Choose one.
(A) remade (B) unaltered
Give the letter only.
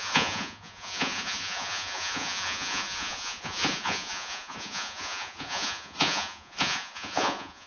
A